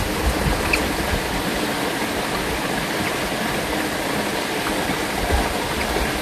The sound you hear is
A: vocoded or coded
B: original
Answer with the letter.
B